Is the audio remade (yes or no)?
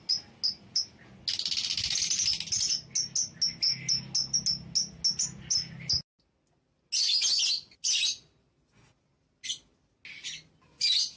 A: no